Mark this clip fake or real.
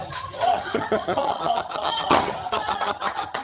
fake